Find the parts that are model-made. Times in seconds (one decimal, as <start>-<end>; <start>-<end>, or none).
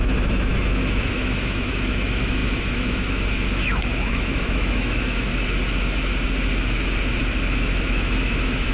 0.0-5.3; 7.5-8.7